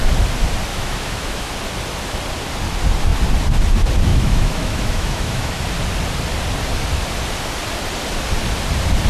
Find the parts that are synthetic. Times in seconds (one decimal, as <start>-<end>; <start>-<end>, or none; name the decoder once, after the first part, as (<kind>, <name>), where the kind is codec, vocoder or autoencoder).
0.7-1.5 (autoencoder, DAC-VAE); 4.1-5.6